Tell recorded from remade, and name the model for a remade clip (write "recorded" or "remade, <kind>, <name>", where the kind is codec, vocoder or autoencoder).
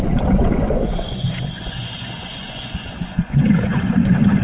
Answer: remade, vocoder, Vocos